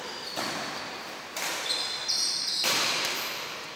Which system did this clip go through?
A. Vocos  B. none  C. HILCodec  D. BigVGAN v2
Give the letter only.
B